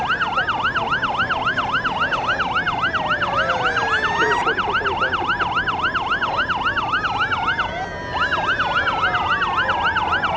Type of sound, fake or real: real